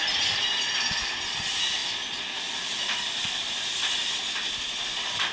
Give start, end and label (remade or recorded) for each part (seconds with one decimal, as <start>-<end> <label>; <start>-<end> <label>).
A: 0.0-5.3 recorded